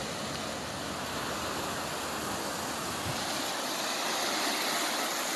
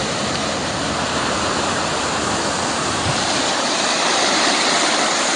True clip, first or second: first